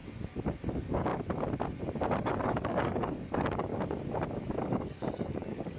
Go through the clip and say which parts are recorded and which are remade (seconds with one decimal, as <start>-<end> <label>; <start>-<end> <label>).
0.0-0.7 recorded; 0.7-1.1 remade; 1.1-2.2 recorded; 2.2-3.7 remade; 3.7-4.6 recorded; 4.6-5.8 remade